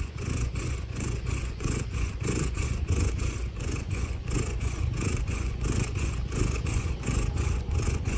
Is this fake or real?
fake